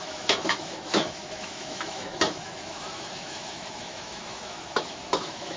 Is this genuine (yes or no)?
no